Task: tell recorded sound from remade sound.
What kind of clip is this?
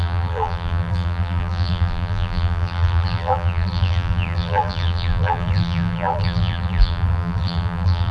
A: remade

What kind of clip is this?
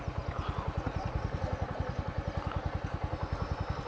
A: recorded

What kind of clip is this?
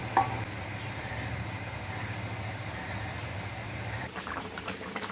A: remade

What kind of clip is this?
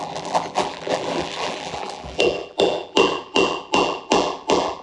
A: remade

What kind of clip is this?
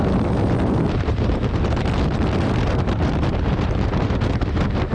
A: remade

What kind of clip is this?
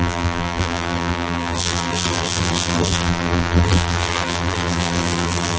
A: remade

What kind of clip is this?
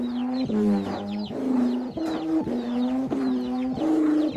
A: recorded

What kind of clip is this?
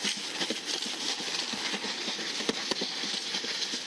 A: recorded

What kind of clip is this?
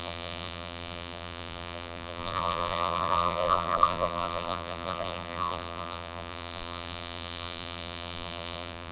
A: remade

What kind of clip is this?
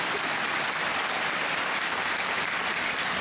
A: remade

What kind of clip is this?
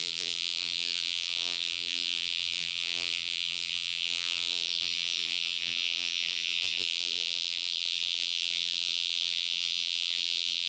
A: remade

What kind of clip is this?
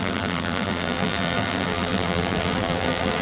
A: remade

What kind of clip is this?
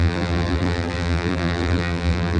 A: remade